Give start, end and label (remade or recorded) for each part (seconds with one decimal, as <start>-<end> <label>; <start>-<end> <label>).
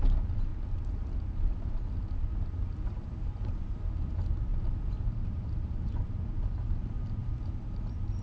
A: 0.0-0.5 remade; 0.5-2.9 recorded; 2.9-4.5 remade; 4.5-5.0 recorded; 5.0-8.2 remade